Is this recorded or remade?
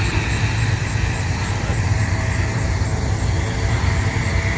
recorded